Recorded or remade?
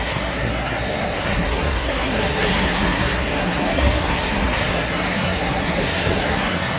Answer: remade